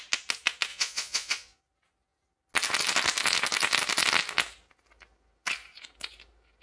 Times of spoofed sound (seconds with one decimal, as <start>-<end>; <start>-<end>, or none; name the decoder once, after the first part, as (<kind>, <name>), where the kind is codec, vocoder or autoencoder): 0.7-1.6 (vocoder, Vocos)